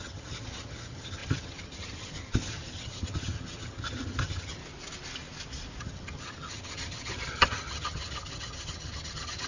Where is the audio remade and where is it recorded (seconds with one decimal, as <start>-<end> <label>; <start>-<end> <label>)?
0.0-4.6 remade; 4.6-5.8 recorded; 5.8-9.5 remade